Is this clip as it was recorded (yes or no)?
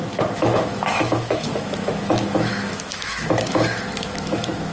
no